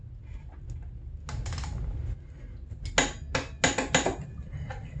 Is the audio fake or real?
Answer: real